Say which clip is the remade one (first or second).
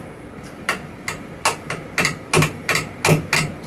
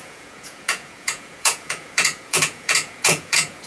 second